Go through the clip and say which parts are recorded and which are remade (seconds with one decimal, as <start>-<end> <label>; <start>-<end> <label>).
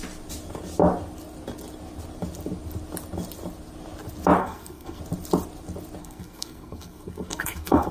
0.0-4.4 recorded; 4.4-5.0 remade; 5.0-6.0 recorded; 6.0-7.9 remade